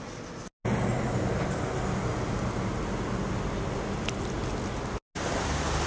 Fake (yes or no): no